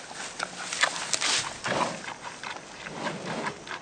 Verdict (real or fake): real